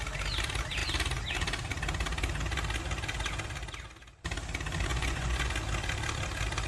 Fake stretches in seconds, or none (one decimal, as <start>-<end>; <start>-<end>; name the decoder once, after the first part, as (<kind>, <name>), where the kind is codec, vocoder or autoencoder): 4.9-5.5 (vocoder, Vocos)